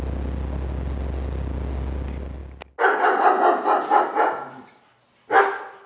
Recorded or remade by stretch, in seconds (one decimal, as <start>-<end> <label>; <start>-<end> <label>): 0.0-5.9 recorded

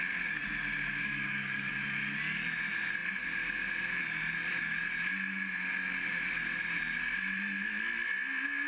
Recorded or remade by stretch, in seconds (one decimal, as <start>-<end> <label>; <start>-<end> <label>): 0.0-1.0 recorded; 1.0-1.7 remade; 1.7-8.7 recorded

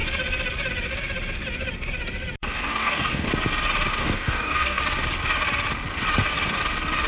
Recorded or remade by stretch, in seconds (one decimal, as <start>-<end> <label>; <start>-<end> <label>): 0.0-2.4 recorded; 2.4-3.3 remade; 3.3-4.0 recorded; 4.0-4.8 remade; 4.8-7.1 recorded

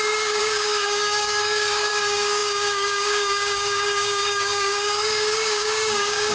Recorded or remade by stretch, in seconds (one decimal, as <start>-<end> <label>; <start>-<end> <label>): 0.0-6.3 remade